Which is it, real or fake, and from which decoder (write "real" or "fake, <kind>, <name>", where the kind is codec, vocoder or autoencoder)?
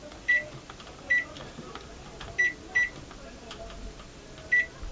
real